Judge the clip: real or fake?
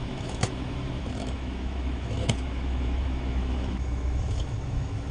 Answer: fake